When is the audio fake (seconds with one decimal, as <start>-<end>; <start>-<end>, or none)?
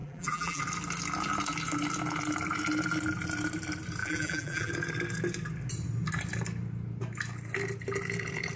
0.0-0.6; 4.0-4.7